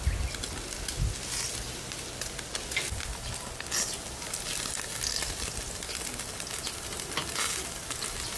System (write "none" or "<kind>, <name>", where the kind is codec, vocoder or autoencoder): none